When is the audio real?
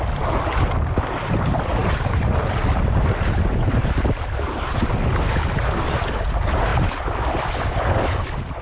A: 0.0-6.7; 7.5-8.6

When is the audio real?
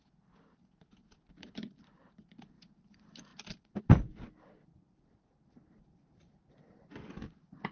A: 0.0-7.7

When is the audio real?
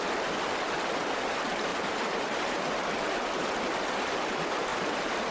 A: 0.0-1.7; 2.8-4.7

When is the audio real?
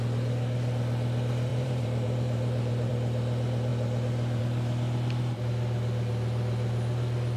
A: 0.0-1.5; 2.9-7.4